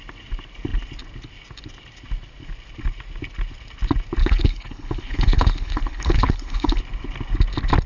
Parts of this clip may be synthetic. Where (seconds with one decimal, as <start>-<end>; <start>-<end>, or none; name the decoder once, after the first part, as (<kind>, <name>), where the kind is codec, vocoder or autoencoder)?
4.2-6.8 (codec, HILCodec)